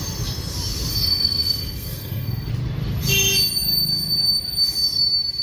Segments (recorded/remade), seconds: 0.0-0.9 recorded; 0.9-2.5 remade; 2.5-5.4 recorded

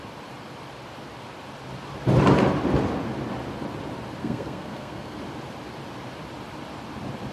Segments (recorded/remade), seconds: 0.0-4.2 recorded; 4.2-5.2 remade; 5.2-7.3 recorded

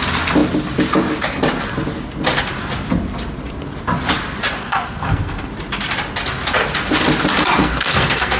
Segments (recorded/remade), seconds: 0.0-4.6 recorded; 4.6-5.5 remade; 5.5-7.6 recorded; 7.6-8.4 remade

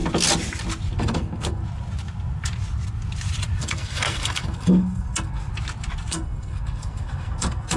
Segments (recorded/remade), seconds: 0.0-1.0 recorded; 1.0-1.6 remade; 1.6-3.6 recorded; 3.6-5.5 remade; 5.5-6.1 recorded; 6.1-7.8 remade

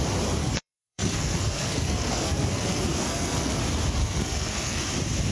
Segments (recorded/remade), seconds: 0.0-0.4 recorded; 0.4-3.6 remade; 3.6-4.0 recorded; 4.0-4.8 remade; 4.8-5.3 recorded

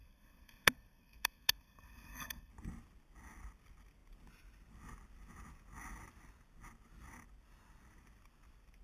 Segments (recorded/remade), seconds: 0.0-2.5 remade; 2.5-8.8 recorded

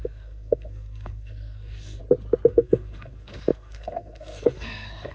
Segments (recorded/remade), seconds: 0.0-2.0 remade; 2.0-2.5 recorded; 2.5-5.1 remade